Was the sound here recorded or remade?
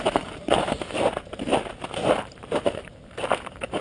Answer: remade